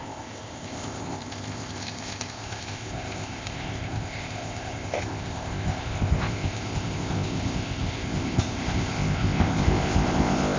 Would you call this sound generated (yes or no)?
yes